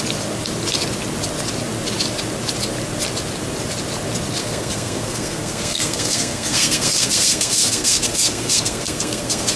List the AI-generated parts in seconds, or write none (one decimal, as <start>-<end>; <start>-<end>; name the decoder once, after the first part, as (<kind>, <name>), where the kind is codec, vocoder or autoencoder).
4.4-9.6 (codec, SNAC)